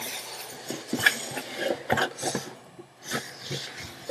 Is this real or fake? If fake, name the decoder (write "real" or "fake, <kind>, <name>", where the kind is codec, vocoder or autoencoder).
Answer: real